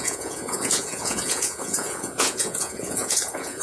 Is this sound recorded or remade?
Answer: remade